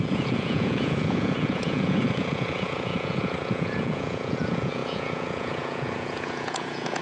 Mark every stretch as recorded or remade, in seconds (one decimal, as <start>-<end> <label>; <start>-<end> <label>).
0.0-7.0 remade